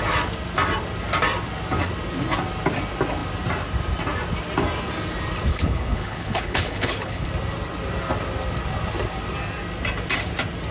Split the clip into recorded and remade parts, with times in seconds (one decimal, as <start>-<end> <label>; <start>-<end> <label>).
0.0-5.5 recorded; 5.5-7.3 remade; 7.3-10.7 recorded